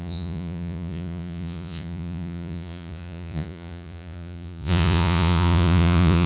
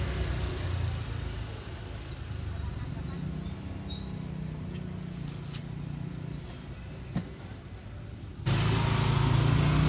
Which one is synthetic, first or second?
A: first